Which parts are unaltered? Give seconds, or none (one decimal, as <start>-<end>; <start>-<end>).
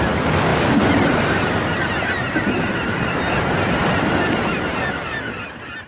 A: 0.0-0.5; 3.4-5.9